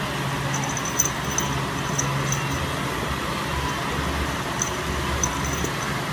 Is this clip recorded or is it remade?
recorded